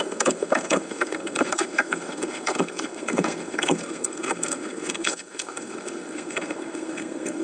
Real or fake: fake